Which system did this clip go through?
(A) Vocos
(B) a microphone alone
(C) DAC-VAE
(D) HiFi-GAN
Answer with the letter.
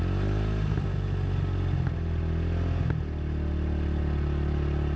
B